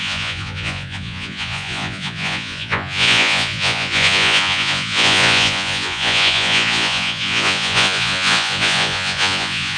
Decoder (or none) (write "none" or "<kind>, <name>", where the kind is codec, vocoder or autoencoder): vocoder, Vocos